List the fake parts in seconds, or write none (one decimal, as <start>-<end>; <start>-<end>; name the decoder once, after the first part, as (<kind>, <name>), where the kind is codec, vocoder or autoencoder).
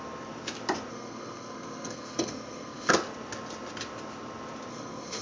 0.9-2.9 (codec, SNAC); 4.7-5.2